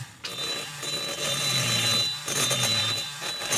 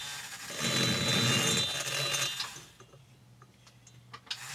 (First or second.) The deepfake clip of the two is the first